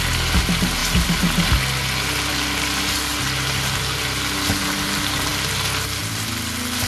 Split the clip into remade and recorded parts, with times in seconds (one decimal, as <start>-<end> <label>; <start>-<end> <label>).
0.0-6.9 recorded